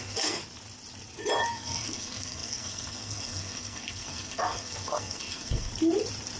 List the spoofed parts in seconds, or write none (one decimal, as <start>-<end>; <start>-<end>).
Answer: 0.0-0.4; 1.5-5.7